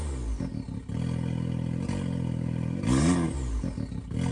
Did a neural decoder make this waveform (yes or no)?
no